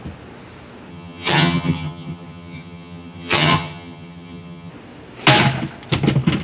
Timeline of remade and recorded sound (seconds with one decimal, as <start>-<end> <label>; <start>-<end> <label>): 0.0-0.9 recorded; 0.9-4.7 remade; 4.7-6.4 recorded